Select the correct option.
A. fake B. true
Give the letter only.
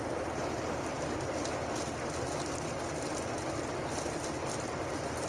B